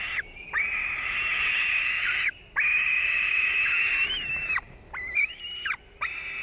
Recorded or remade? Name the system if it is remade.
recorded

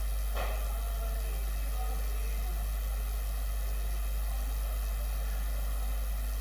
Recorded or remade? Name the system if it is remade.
recorded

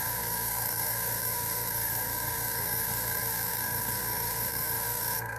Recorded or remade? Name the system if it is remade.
remade, codec, SNAC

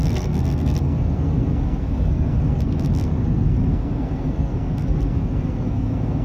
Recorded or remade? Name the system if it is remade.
remade, codec, SNAC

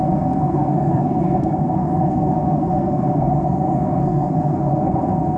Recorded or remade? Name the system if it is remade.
remade, codec, SNAC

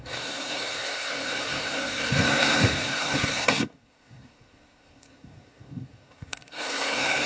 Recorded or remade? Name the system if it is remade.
remade, codec, SNAC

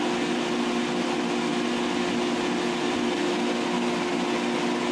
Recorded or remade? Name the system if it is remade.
recorded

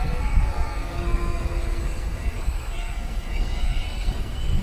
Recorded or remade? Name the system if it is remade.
remade, codec, SNAC